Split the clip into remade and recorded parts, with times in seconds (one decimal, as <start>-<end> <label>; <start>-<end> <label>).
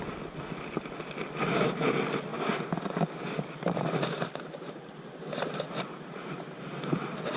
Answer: 0.0-7.4 recorded